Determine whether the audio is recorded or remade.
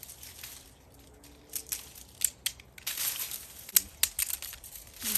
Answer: recorded